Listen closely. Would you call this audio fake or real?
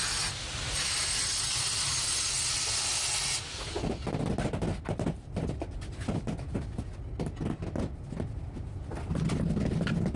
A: real